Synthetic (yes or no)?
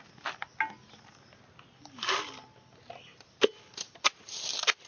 no